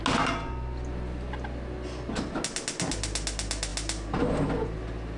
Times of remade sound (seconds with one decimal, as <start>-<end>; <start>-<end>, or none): none